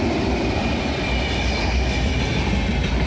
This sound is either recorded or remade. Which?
recorded